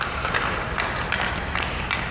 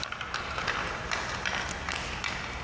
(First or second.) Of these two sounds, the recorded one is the second